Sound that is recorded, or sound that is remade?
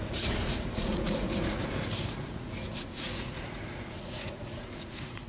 remade